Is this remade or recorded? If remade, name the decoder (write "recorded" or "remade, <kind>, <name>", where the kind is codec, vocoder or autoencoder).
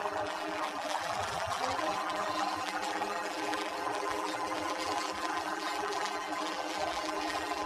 remade, vocoder, BigVGAN v2